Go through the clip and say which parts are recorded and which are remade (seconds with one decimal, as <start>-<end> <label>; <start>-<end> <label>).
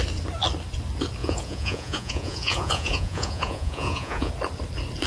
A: 0.0-1.2 recorded; 1.2-4.3 remade; 4.3-5.1 recorded